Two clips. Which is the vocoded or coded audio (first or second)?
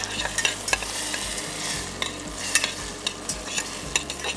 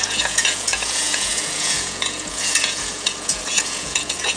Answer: second